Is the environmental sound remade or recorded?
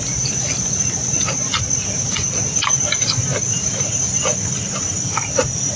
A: recorded